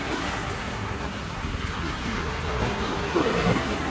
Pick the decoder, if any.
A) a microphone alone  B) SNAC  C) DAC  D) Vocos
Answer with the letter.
B